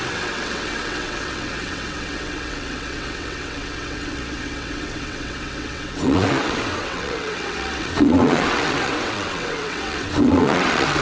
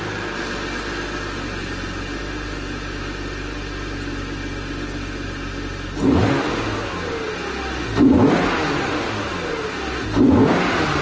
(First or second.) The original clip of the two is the second